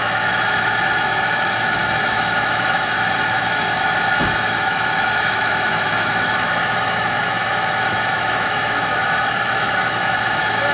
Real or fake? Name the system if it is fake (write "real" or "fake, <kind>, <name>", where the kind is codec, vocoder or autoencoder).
fake, autoencoder, DAC-VAE